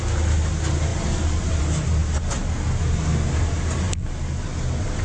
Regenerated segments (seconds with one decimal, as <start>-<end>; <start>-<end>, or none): none

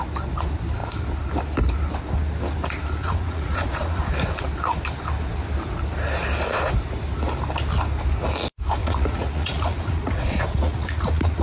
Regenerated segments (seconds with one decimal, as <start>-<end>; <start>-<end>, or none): 3.0-4.0; 8.8-11.4

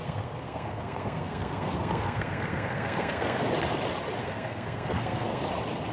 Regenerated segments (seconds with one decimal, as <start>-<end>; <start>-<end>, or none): 0.0-3.5; 4.2-5.4

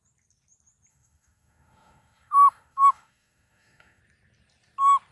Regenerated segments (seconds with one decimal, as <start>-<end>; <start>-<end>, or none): 0.9-4.0

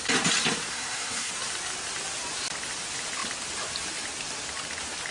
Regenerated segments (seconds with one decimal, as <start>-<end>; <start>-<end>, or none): 0.7-1.3

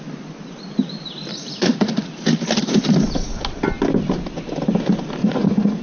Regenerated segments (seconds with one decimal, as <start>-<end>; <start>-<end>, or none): 1.3-2.1; 5.2-5.8

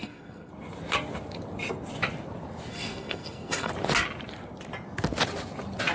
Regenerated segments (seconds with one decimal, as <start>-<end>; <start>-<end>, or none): 0.0-0.5; 2.7-3.7

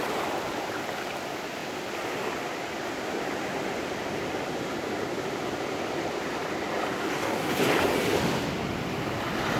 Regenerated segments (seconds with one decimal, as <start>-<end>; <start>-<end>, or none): 6.9-7.7